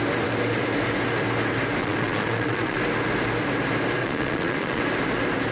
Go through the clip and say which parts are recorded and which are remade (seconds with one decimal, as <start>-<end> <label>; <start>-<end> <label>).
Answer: 0.0-1.8 recorded; 1.8-2.8 remade; 2.8-4.0 recorded; 4.0-4.8 remade; 4.8-5.5 recorded